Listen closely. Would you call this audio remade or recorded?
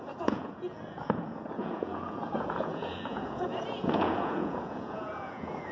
remade